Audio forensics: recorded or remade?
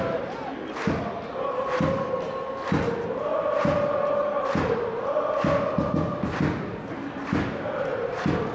recorded